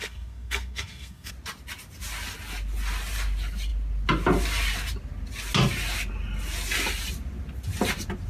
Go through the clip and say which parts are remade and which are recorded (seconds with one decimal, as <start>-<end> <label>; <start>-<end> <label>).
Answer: 0.0-1.3 remade; 1.3-8.3 recorded